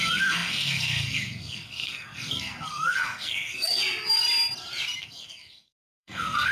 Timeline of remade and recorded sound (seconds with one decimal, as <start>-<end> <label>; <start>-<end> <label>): 0.0-3.8 remade; 3.8-5.0 recorded; 5.0-6.5 remade